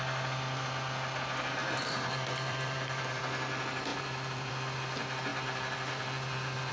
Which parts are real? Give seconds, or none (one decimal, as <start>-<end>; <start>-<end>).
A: 0.0-1.6; 3.2-3.9; 4.5-5.3